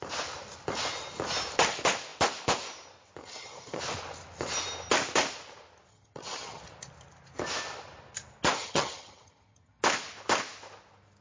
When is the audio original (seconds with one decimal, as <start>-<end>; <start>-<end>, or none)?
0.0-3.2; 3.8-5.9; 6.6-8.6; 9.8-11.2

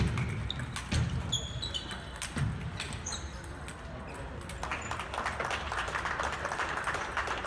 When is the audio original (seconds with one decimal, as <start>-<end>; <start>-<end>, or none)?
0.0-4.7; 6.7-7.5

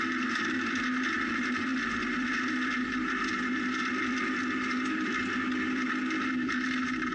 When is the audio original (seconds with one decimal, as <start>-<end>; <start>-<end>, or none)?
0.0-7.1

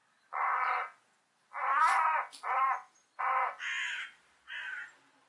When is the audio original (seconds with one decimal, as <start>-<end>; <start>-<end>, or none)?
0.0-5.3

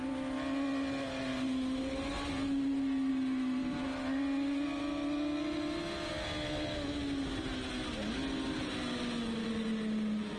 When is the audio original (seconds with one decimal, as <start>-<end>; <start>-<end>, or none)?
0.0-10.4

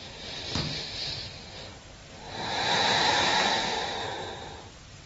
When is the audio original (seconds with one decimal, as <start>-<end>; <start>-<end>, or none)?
0.0-2.0